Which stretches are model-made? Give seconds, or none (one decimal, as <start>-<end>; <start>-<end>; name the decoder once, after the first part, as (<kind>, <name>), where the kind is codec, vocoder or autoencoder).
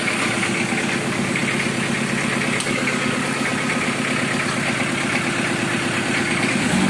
0.0-1.4 (codec, DAC); 2.6-3.5; 6.2-6.9